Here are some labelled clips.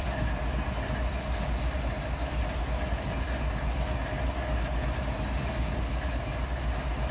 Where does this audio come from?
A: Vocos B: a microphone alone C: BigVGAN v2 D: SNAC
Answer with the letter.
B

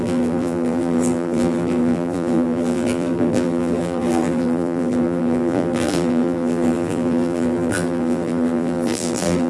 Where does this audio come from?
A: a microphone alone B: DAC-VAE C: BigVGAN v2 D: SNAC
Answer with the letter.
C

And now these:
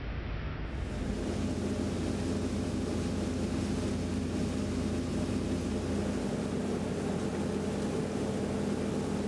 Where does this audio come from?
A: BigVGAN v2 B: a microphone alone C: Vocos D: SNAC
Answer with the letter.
B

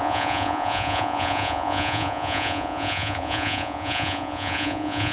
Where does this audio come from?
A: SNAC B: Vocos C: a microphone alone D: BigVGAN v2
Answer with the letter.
B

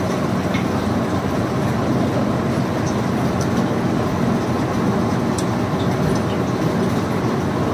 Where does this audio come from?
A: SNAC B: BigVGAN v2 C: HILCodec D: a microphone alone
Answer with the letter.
D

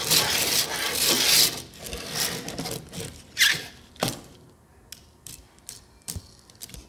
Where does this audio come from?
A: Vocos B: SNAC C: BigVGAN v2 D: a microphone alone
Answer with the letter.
D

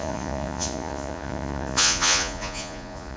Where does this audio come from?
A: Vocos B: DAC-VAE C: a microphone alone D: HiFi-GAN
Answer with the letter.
A